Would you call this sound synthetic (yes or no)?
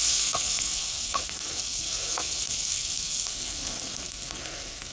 yes